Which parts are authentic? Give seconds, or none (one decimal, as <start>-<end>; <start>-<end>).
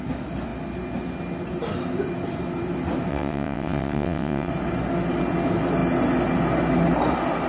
0.0-3.1; 4.5-7.5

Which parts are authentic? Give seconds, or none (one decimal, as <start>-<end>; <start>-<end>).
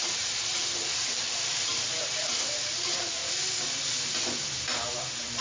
3.2-4.9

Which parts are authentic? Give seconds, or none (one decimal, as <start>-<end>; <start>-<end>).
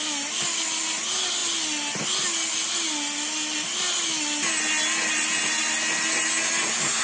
0.0-7.0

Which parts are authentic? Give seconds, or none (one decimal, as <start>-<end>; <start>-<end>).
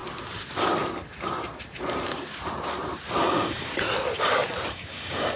0.0-3.2; 3.7-4.7